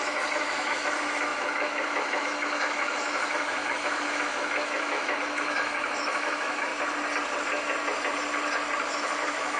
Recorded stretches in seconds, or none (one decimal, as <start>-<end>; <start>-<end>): 6.7-8.9